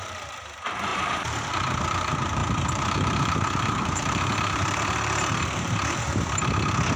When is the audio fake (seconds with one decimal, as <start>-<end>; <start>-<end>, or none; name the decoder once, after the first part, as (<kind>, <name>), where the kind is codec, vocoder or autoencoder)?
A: 0.0-6.4 (vocoder, BigVGAN v2)